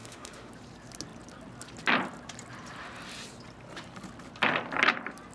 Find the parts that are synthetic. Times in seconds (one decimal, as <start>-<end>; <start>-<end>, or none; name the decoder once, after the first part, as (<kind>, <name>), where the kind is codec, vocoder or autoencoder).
0.0-0.5 (autoencoder, DAC-VAE)